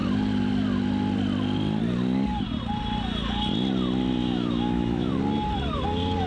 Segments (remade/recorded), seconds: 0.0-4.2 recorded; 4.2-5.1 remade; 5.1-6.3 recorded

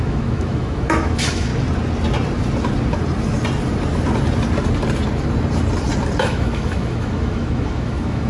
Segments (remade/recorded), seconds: 0.0-1.5 remade; 1.5-6.2 recorded; 6.2-8.3 remade

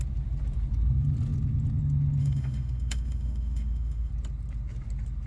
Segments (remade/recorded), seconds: 0.0-2.2 recorded; 2.2-4.1 remade; 4.1-5.3 recorded

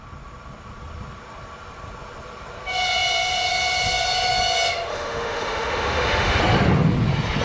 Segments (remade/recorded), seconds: 0.0-4.9 recorded; 4.9-6.4 remade; 6.4-7.4 recorded

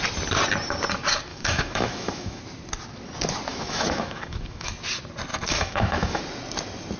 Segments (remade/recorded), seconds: 0.0-1.3 recorded; 1.3-2.4 remade; 2.4-3.5 recorded; 3.5-4.7 remade; 4.7-5.3 recorded; 5.3-6.2 remade; 6.2-7.0 recorded

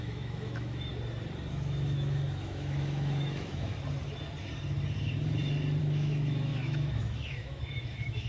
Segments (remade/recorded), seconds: 0.0-0.9 remade; 0.9-1.5 recorded; 1.5-3.7 remade; 3.7-5.8 recorded; 5.8-8.3 remade